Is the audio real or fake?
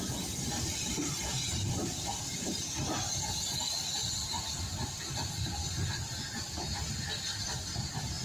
fake